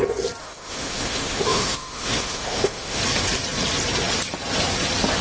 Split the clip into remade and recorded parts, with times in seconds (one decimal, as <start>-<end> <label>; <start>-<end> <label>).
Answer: 0.0-0.4 recorded; 0.4-3.0 remade; 3.0-5.2 recorded